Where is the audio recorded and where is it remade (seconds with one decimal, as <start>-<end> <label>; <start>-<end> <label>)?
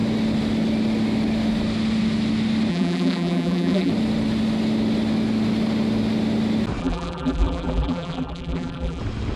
0.0-2.7 recorded; 2.7-3.9 remade; 3.9-6.8 recorded; 6.8-9.0 remade; 9.0-9.4 recorded